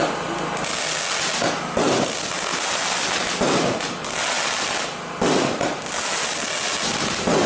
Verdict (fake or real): real